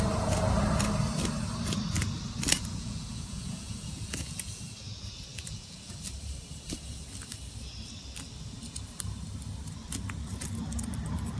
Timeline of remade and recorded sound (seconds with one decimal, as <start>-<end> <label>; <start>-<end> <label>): 0.0-2.5 recorded; 2.5-4.6 remade; 4.6-5.3 recorded; 5.3-6.0 remade; 6.0-11.4 recorded